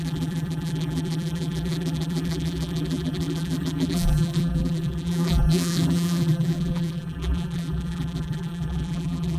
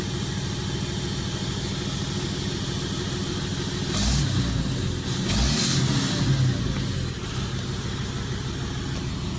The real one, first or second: second